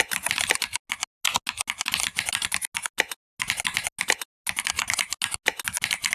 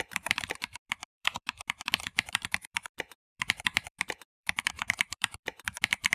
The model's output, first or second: second